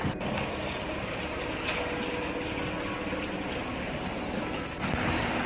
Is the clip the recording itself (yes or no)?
yes